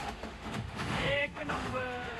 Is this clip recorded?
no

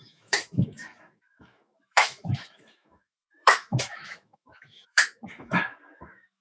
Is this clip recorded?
no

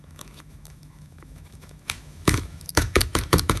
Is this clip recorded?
no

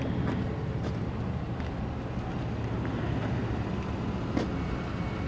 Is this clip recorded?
yes